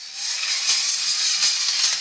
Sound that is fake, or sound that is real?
real